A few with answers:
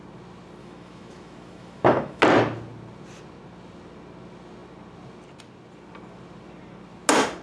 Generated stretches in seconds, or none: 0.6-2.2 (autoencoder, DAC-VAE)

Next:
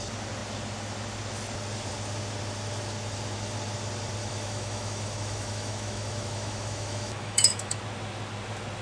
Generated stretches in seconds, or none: 4.2-7.8 (autoencoder, DAC-VAE)

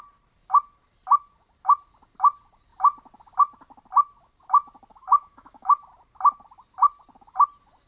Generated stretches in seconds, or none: 4.9-5.8 (autoencoder, DAC-VAE)

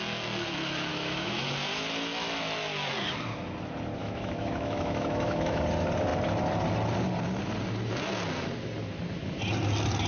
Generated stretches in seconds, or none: 0.9-1.5 (autoencoder, DAC-VAE); 4.0-5.6

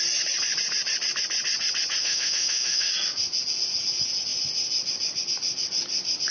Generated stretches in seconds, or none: 2.0-2.9 (autoencoder, DAC-VAE)